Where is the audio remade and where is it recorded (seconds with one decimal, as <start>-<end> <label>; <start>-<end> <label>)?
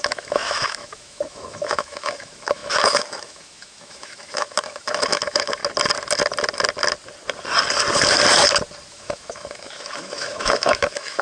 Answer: 0.0-5.6 remade; 5.6-8.9 recorded; 8.9-11.2 remade